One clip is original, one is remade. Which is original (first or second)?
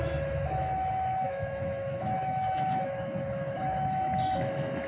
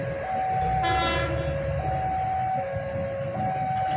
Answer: second